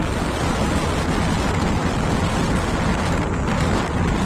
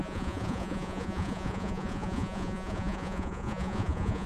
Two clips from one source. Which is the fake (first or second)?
second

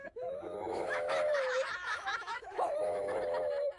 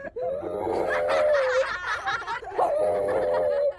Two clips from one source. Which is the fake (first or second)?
first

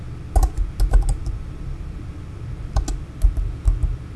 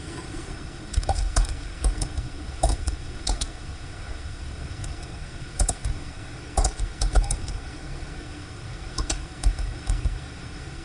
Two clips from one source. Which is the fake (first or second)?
second